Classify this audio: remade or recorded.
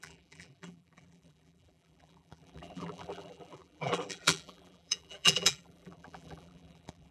remade